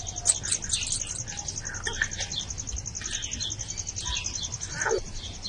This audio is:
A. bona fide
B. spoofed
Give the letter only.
A